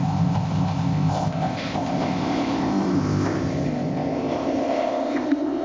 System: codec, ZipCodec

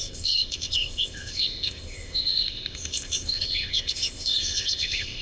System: codec, ZipCodec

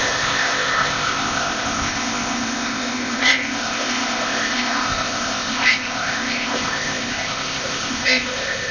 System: codec, ZipCodec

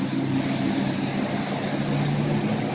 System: none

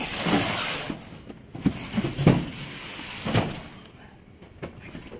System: none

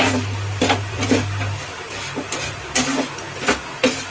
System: none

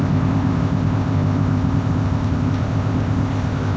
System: codec, ZipCodec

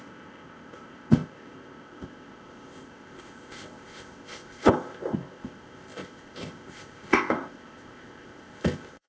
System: codec, ZipCodec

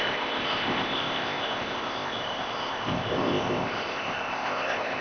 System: codec, ZipCodec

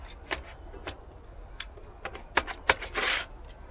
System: none